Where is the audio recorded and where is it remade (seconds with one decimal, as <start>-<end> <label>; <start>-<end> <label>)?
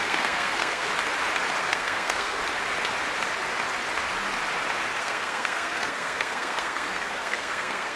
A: 0.0-0.9 remade; 0.9-1.6 recorded; 1.6-2.4 remade; 2.4-5.0 recorded; 5.0-8.0 remade